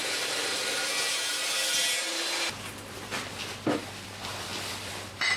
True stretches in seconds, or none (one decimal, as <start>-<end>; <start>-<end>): 0.5-3.4